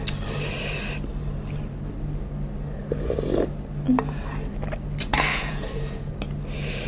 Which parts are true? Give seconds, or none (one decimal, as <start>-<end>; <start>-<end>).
0.0-5.3; 6.1-6.9